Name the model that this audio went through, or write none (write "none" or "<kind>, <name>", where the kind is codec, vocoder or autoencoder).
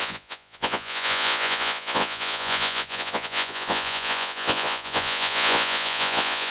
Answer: vocoder, Vocos